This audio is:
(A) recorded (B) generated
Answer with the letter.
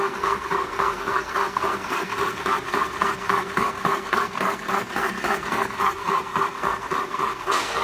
B